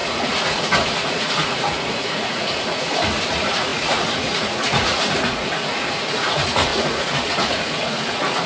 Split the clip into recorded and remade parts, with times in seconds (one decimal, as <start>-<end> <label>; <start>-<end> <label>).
0.0-8.5 remade